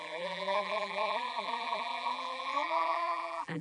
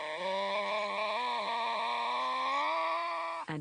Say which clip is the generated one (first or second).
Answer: first